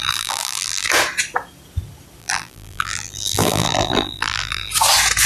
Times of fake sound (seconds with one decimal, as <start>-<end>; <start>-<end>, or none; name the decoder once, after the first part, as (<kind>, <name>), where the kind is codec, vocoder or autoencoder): 0.0-0.9 (vocoder, BigVGAN v2); 2.2-4.7